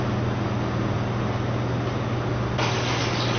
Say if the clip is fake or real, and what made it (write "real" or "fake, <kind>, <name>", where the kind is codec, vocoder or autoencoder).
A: real